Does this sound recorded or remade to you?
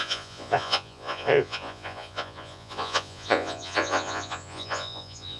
remade